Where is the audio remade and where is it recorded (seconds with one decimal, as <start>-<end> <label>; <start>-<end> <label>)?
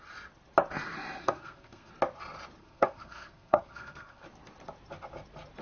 0.0-1.2 recorded; 1.2-1.9 remade; 1.9-2.6 recorded; 2.6-4.2 remade; 4.2-5.6 recorded